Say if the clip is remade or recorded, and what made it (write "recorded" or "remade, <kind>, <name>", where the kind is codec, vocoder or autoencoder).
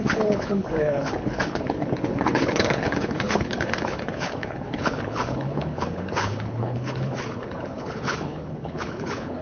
remade, codec, HILCodec